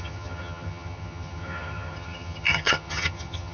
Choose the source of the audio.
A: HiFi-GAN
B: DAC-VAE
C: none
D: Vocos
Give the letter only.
A